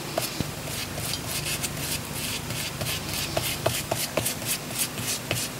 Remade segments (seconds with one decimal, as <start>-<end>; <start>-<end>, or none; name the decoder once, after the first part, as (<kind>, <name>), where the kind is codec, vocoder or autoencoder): 3.5-4.4 (codec, DAC)